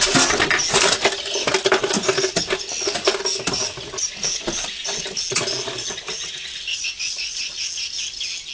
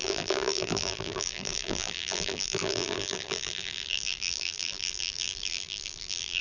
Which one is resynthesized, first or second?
second